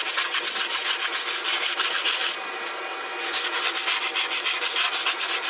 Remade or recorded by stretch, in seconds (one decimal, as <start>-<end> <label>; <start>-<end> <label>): 0.0-5.5 recorded